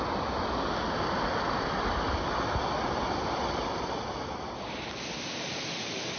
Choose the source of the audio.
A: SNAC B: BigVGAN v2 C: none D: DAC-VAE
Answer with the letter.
C